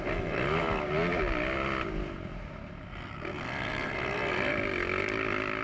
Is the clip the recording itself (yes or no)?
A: yes